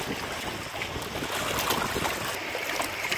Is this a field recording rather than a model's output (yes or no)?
yes